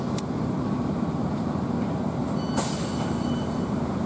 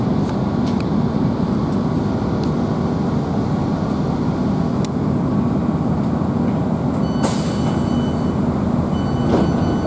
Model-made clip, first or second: first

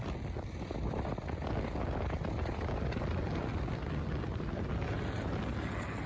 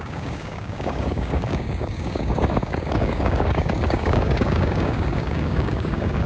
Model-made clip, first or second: second